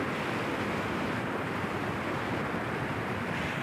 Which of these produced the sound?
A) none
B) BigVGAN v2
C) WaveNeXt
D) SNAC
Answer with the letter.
A